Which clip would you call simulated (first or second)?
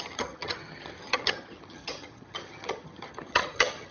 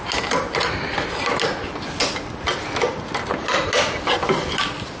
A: first